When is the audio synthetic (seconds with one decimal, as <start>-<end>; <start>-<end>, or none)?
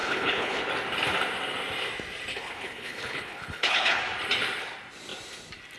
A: 0.0-0.6; 2.3-4.0